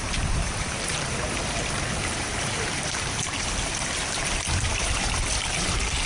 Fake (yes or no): yes